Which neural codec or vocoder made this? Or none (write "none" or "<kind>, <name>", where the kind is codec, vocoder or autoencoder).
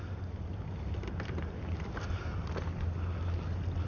none